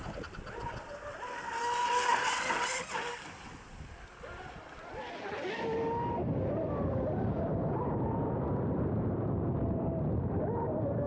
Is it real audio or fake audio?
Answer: real